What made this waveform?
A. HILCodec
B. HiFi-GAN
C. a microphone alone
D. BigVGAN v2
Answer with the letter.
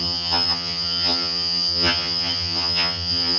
B